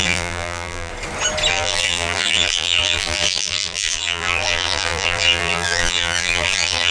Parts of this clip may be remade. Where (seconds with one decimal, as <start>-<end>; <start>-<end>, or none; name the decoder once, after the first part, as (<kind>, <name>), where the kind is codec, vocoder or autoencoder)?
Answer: 0.0-0.9 (vocoder, BigVGAN v2); 1.5-6.9